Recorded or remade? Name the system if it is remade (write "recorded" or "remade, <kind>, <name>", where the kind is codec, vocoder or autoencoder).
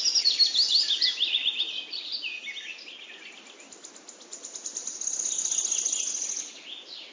recorded